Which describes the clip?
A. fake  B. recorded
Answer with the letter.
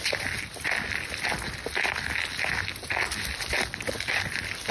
B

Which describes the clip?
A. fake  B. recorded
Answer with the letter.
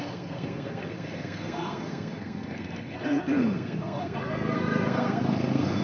A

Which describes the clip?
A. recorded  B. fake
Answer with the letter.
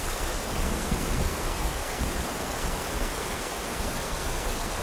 B